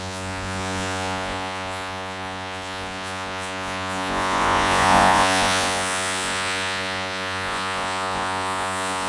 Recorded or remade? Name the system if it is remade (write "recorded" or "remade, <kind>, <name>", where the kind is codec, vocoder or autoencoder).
remade, vocoder, Vocos